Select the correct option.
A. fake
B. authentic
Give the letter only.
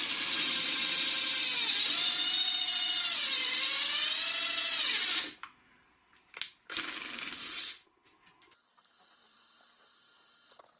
B